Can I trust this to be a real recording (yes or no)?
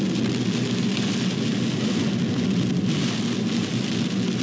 yes